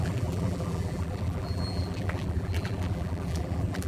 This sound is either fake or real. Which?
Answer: fake